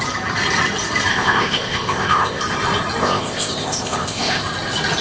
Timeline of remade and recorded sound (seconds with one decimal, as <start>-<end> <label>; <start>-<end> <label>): 0.0-1.1 recorded; 1.1-2.4 remade; 2.4-3.0 recorded; 3.0-4.4 remade; 4.4-5.0 recorded